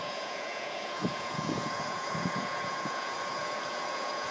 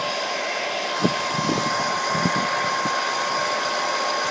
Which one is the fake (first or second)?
first